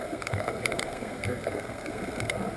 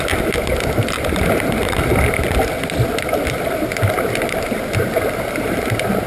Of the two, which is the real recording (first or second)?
second